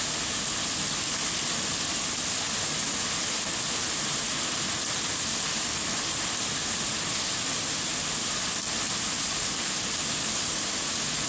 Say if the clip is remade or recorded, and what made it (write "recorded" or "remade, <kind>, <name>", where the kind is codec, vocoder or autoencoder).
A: recorded